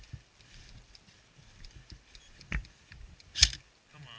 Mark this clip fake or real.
fake